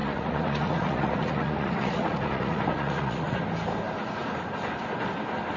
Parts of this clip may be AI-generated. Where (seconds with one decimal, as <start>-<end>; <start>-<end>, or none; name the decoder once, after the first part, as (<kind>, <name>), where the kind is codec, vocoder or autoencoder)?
0.0-3.4 (vocoder, Vocos)